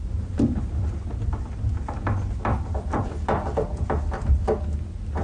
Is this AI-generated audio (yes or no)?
no